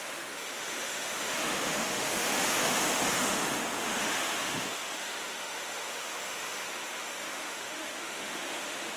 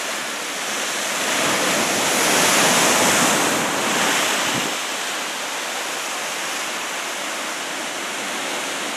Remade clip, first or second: first